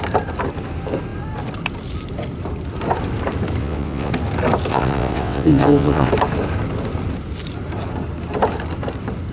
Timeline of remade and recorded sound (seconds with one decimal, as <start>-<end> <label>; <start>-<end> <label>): 0.0-3.6 recorded; 3.6-4.1 remade; 4.1-4.7 recorded; 4.7-6.1 remade; 6.1-9.3 recorded